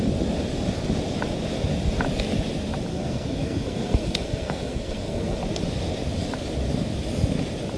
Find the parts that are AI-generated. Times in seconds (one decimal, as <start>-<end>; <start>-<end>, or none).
2.9-5.4